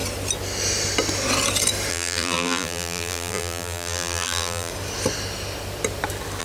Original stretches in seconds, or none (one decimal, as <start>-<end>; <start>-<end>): 0.0-1.9; 4.7-6.4